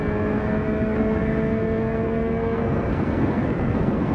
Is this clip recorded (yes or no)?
no